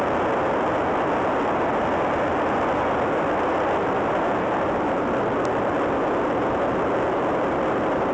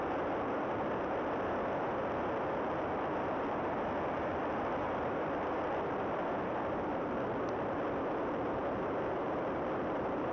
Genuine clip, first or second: first